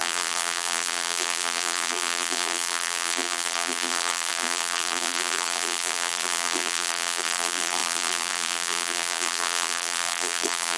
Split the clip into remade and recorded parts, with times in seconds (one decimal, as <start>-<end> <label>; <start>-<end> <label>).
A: 0.0-10.8 remade